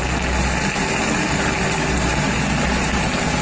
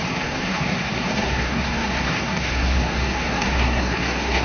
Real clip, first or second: first